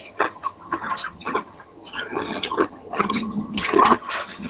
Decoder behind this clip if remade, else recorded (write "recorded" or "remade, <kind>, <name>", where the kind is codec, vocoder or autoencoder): remade, vocoder, HiFi-GAN